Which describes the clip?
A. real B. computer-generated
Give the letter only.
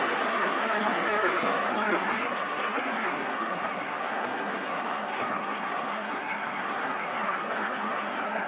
B